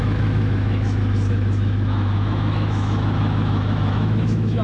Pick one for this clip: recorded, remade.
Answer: remade